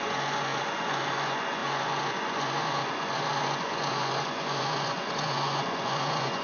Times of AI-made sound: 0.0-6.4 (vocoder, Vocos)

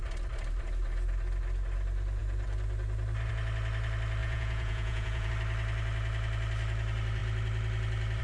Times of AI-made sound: 4.2-5.3 (vocoder, Vocos)

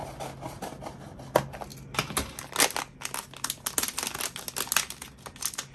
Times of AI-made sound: none

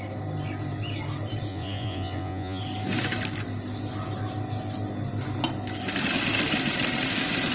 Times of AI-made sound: 1.5-2.6 (vocoder, Vocos)

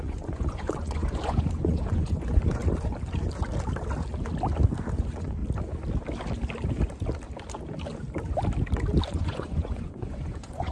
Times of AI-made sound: 0.0-2.6 (vocoder, Vocos); 5.0-5.4; 9.1-10.7

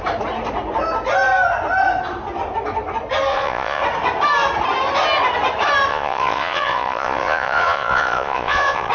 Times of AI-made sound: 3.3-3.8 (vocoder, Vocos); 5.9-8.9